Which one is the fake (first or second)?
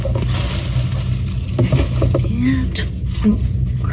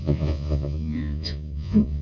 second